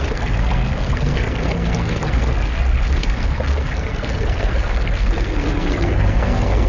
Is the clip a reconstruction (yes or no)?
yes